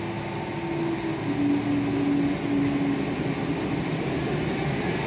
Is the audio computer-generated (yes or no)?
no